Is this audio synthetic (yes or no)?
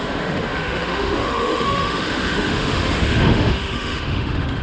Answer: yes